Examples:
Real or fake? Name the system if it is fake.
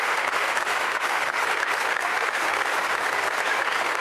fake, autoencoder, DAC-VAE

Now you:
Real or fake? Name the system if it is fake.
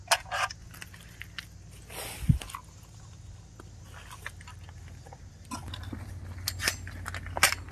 real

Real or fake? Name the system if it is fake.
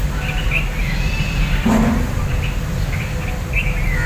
real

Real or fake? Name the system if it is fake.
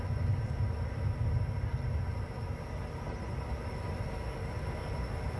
real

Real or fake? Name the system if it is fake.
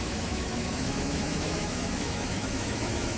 fake, autoencoder, DAC-VAE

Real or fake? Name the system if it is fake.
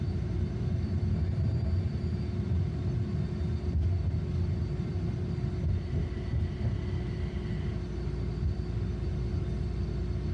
real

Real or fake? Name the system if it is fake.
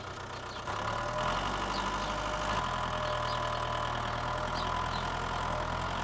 real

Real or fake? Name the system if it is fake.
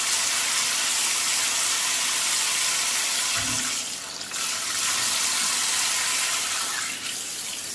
real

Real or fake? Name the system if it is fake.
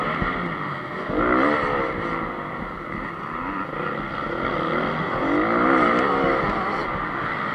real